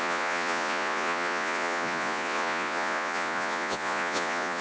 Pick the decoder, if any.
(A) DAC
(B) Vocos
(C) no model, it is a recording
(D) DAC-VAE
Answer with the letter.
B